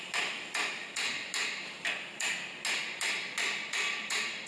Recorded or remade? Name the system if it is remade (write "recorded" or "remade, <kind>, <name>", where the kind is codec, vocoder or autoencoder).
recorded